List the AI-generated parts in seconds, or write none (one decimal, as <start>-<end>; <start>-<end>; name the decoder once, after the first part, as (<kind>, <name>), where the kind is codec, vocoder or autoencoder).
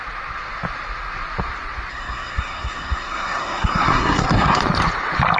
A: 1.9-4.6 (codec, SNAC)